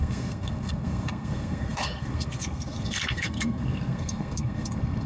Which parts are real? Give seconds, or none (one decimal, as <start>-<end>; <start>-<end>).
none